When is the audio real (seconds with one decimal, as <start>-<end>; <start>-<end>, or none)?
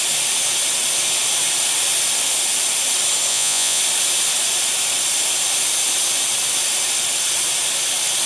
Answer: 0.0-3.3; 3.8-8.3